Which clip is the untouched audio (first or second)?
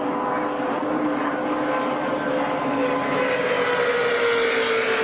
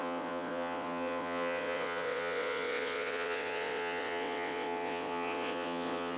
first